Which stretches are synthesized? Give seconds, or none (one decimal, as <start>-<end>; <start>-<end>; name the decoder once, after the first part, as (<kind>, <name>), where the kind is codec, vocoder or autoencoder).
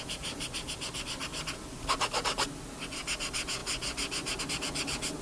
0.0-1.3 (vocoder, BigVGAN v2); 2.7-3.6; 4.4-5.2